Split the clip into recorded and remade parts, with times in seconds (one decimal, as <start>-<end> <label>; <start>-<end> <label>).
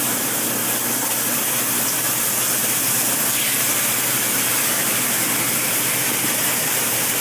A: 0.0-2.6 recorded; 2.6-5.1 remade; 5.1-7.2 recorded